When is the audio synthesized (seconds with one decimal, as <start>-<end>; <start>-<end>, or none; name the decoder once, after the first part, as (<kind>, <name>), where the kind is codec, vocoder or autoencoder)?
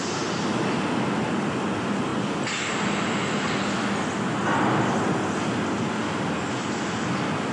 none